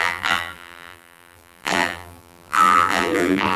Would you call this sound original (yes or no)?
no